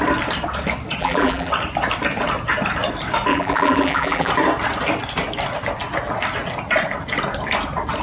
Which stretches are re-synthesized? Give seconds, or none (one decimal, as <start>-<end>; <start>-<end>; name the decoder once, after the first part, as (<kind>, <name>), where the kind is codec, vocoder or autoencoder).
1.0-1.5 (vocoder, BigVGAN v2); 3.3-4.3

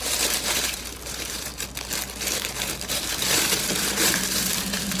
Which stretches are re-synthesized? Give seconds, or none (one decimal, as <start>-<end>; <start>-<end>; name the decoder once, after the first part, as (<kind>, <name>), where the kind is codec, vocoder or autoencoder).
0.0-1.5 (vocoder, BigVGAN v2); 2.3-5.0

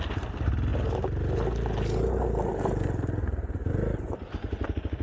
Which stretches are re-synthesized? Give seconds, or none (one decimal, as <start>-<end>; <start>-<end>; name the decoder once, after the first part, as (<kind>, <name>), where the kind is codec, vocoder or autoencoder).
none